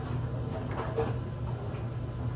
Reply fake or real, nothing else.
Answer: real